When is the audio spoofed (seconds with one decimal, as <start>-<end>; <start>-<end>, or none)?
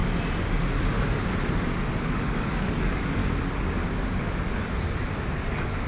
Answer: 2.0-3.2; 5.5-5.9